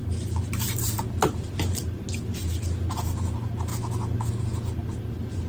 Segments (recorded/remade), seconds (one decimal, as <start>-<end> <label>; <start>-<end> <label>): 0.0-2.3 remade; 2.3-5.5 recorded